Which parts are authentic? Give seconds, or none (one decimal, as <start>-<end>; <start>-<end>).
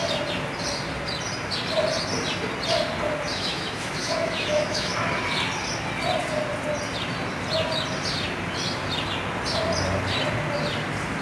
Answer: 0.0-3.3; 4.9-11.2